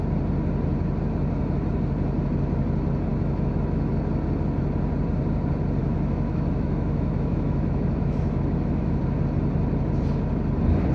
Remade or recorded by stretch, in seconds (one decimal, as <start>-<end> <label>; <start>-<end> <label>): 0.0-3.1 recorded; 3.1-3.9 remade; 3.9-5.8 recorded; 5.8-9.0 remade; 9.0-10.9 recorded